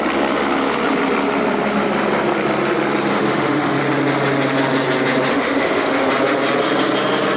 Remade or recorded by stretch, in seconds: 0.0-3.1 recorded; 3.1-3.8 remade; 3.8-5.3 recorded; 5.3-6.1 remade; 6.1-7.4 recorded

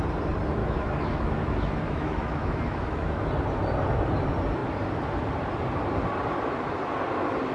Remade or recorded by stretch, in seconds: 0.0-0.6 recorded; 0.6-3.3 remade; 3.3-7.5 recorded

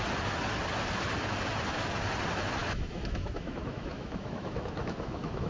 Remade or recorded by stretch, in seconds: 0.0-2.6 recorded; 2.6-5.5 remade

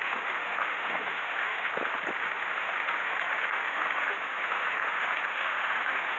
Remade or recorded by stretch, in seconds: 0.0-1.7 remade; 1.7-2.2 recorded; 2.2-6.2 remade

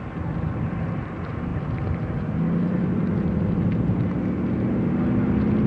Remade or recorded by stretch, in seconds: 0.0-5.7 recorded

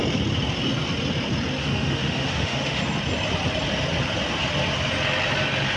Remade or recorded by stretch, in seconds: 0.0-1.6 recorded; 1.6-2.8 remade; 2.8-5.8 recorded

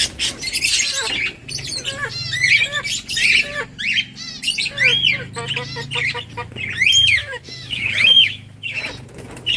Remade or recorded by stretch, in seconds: 0.0-7.2 recorded; 7.2-8.8 remade; 8.8-9.6 recorded

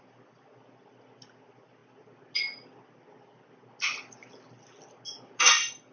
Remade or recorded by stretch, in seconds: 0.0-5.9 recorded